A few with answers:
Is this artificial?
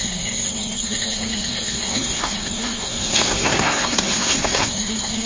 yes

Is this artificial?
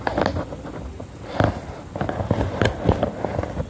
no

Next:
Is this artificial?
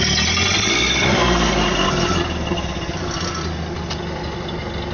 no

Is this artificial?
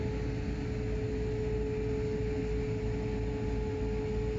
no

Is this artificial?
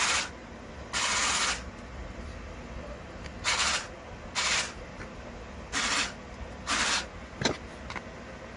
no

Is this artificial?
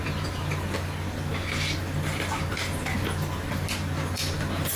no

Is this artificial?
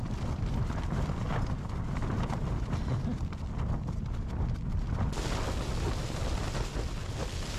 no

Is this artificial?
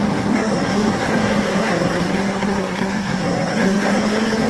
yes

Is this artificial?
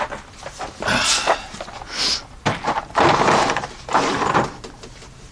no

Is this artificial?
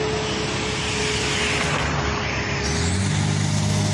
no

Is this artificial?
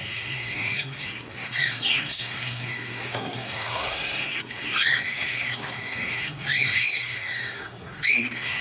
yes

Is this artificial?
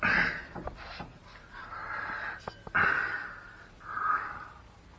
no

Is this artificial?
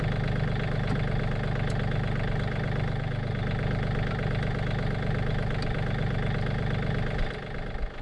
no